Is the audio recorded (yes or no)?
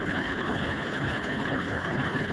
no